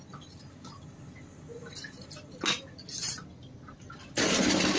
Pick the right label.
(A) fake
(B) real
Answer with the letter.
B